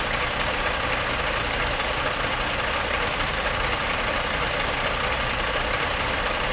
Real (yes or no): no